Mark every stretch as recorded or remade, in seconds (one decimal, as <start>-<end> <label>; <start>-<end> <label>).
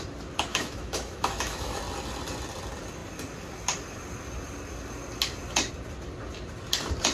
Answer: 0.0-0.5 recorded; 0.5-1.8 remade; 1.8-7.1 recorded